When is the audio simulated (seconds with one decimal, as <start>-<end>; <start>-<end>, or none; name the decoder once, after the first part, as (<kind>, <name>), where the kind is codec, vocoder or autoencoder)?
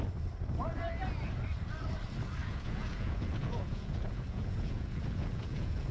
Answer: 2.4-5.9 (vocoder, Vocos)